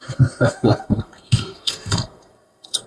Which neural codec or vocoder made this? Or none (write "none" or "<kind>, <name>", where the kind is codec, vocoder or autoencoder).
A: codec, SNAC